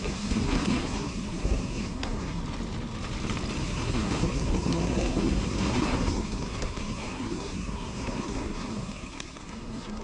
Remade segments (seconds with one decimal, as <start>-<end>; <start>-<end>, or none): 0.0-2.4; 3.6-10.0